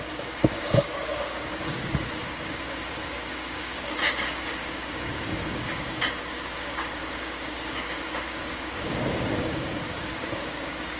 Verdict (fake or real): fake